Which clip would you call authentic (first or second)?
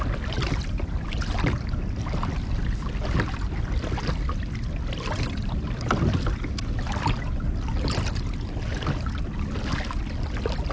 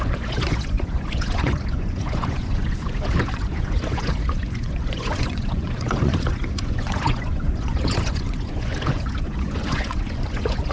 first